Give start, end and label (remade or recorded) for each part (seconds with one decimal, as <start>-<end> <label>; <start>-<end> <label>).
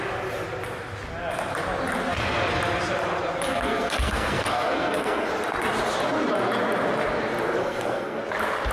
0.0-3.5 recorded; 3.5-5.3 remade; 5.3-7.6 recorded; 7.6-8.2 remade; 8.2-8.7 recorded